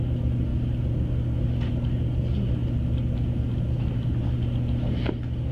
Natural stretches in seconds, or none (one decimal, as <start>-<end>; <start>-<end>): 0.0-5.5